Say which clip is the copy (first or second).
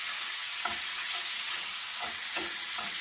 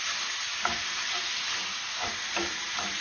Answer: first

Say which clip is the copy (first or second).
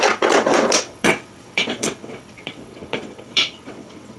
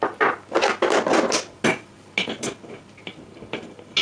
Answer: first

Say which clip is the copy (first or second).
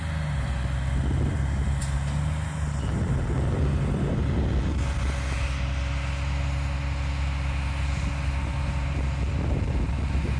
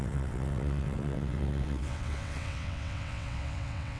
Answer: second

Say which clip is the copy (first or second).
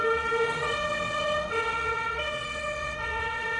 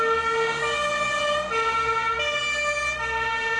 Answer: first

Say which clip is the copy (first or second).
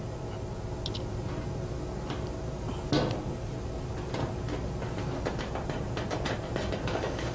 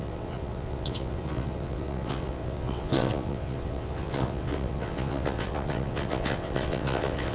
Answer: second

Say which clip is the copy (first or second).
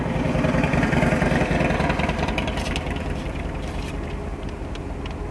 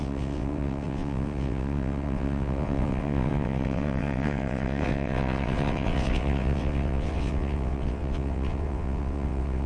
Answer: second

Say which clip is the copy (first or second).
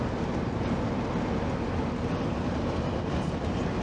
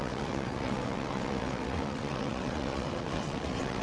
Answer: second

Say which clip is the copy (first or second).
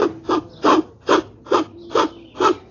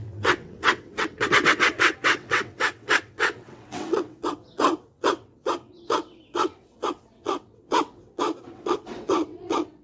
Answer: second